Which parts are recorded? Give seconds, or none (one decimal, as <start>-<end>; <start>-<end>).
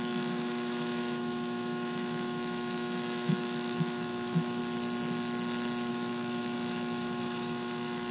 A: 4.6-5.9